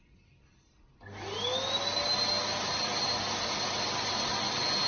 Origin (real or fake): real